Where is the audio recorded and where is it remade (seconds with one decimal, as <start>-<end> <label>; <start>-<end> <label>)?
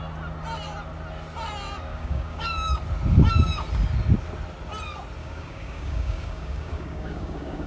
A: 0.0-1.9 recorded; 1.9-2.8 remade; 2.8-5.2 recorded; 5.2-7.7 remade